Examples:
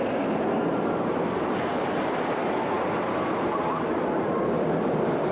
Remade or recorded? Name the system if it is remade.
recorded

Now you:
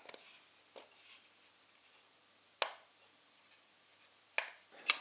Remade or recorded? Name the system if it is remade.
recorded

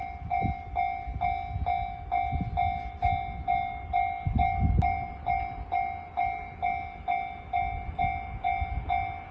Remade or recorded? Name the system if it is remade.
recorded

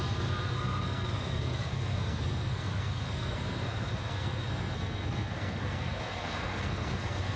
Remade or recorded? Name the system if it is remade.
remade, codec, SNAC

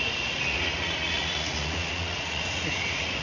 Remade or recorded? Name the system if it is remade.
remade, vocoder, Vocos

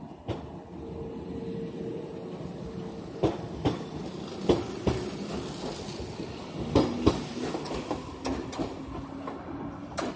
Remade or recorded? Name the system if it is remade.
recorded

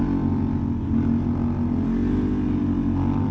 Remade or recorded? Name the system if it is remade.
recorded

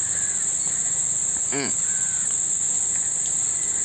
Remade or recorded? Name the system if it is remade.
recorded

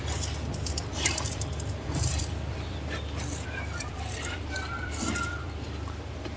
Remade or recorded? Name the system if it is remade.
remade, vocoder, BigVGAN v2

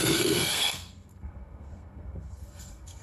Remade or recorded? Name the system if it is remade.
remade, codec, SNAC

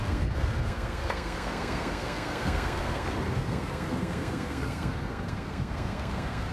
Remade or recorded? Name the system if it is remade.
remade, codec, SNAC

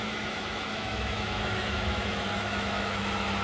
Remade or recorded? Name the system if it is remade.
remade, autoencoder, DAC-VAE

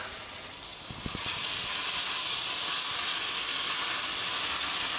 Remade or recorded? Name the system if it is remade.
recorded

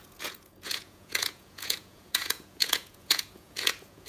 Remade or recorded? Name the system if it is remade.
remade, vocoder, Vocos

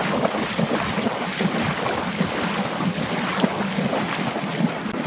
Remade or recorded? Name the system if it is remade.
recorded